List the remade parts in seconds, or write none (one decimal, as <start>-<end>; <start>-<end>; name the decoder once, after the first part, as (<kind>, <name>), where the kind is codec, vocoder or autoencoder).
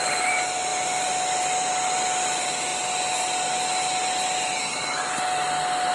none